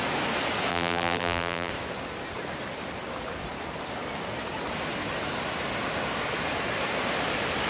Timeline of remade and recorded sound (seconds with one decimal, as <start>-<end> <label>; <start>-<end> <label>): 0.0-0.7 recorded; 0.7-1.7 remade; 1.7-7.7 recorded